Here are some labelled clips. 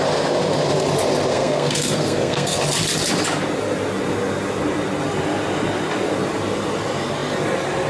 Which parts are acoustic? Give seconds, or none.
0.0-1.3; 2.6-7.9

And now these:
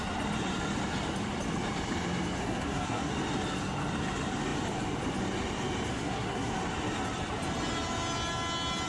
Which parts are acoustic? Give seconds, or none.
0.0-2.4; 3.1-5.9; 6.5-8.9

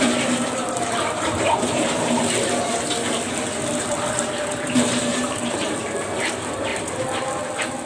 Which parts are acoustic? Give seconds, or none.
2.2-4.1; 6.7-7.9